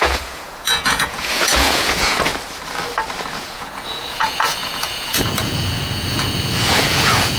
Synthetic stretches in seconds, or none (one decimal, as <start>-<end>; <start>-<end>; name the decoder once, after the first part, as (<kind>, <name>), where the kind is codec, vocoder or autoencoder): 0.0-2.3 (vocoder, Vocos); 3.4-7.4